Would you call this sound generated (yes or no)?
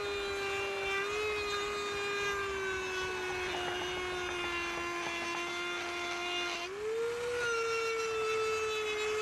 no